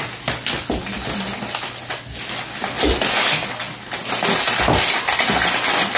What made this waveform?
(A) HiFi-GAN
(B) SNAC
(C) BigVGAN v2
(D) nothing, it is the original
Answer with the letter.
D